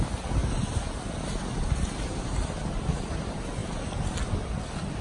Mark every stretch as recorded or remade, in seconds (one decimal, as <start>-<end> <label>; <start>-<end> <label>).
0.0-5.0 recorded